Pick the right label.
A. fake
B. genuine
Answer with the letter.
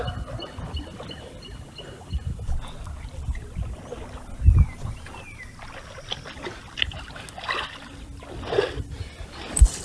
B